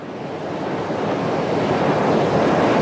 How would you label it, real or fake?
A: real